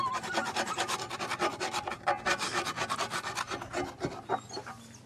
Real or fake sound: real